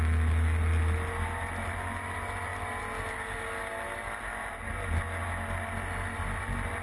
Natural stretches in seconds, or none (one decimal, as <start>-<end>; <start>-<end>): 0.0-6.8